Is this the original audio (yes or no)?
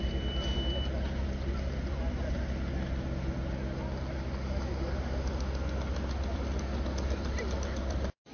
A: yes